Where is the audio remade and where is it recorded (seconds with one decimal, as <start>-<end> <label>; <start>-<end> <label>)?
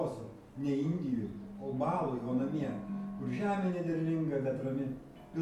0.0-0.9 recorded; 0.9-2.6 remade; 2.6-5.4 recorded